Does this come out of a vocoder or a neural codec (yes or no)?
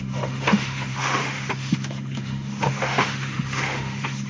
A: yes